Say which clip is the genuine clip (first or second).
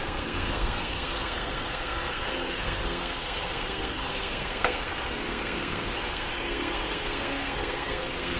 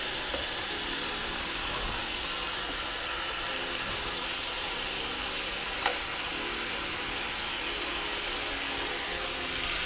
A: second